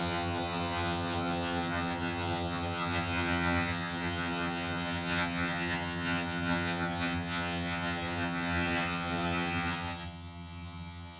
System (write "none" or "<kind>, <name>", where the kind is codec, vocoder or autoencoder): vocoder, HiFi-GAN